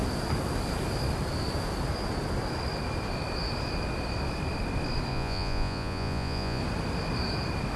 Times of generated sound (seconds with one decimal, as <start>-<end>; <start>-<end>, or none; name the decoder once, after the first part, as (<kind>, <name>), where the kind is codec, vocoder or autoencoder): 5.1-6.6 (vocoder, Vocos)

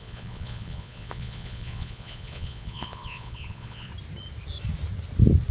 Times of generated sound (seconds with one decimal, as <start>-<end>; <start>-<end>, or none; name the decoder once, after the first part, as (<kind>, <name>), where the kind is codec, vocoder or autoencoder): 0.0-3.9 (vocoder, Vocos)

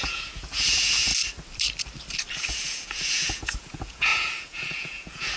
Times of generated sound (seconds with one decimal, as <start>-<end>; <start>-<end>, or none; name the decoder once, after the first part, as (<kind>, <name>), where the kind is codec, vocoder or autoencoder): 0.0-1.1 (vocoder, Vocos); 2.5-5.4